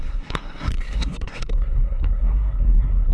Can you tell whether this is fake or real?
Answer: fake